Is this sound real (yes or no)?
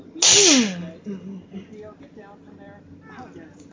yes